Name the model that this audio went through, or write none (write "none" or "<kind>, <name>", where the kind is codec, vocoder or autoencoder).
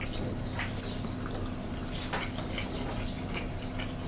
none